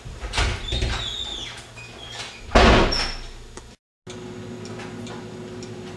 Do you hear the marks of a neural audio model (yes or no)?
no